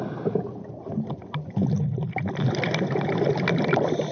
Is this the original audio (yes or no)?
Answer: yes